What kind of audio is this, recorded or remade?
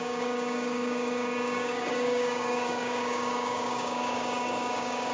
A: remade